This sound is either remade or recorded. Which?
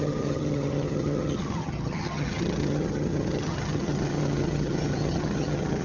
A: remade